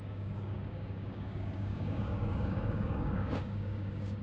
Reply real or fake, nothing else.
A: fake